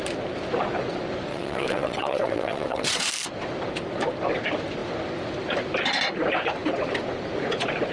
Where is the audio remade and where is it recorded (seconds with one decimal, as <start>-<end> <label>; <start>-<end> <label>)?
0.0-1.3 recorded; 1.3-3.1 remade; 3.1-7.9 recorded